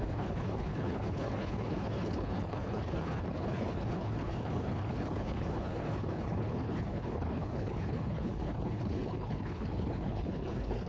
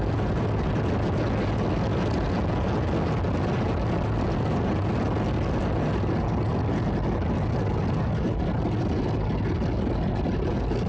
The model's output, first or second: first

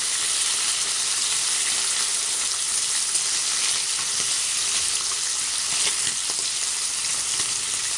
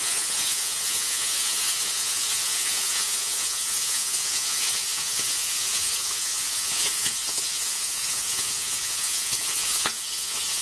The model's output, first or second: second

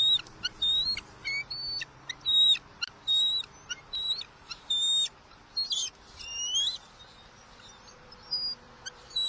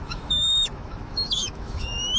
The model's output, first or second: second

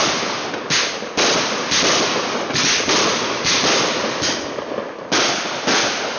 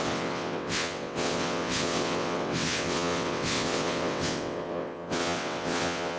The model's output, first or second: second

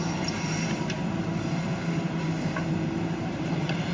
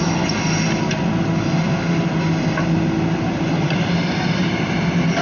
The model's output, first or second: first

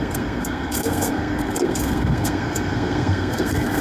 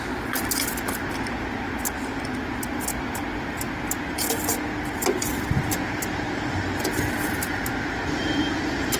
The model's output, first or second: first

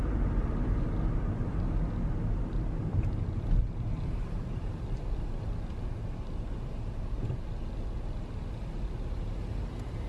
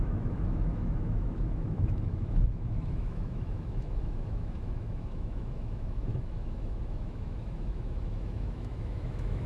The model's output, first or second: second